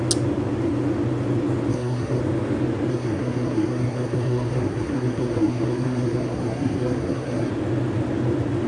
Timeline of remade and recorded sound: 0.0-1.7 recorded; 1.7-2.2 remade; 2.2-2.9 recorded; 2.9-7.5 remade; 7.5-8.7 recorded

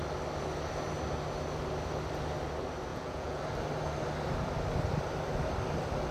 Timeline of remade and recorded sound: 0.0-2.9 recorded; 2.9-3.4 remade; 3.4-6.1 recorded

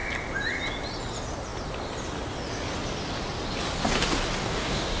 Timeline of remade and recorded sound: 0.0-4.4 recorded; 4.4-5.0 remade

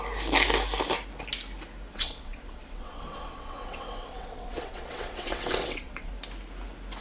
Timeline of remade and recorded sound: 0.0-1.9 recorded; 1.9-6.1 remade; 6.1-7.0 recorded

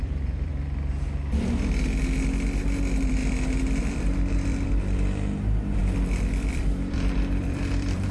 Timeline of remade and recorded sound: 0.0-0.5 remade; 0.5-2.6 recorded; 2.6-3.2 remade; 3.2-3.8 recorded; 3.8-8.1 remade

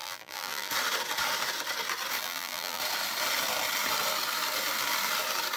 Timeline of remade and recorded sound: 0.0-0.7 remade; 0.7-2.2 recorded; 2.2-2.8 remade; 2.8-5.6 recorded

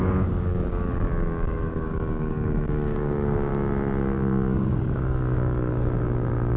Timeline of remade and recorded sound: 0.0-3.5 remade; 3.5-4.0 recorded; 4.0-6.6 remade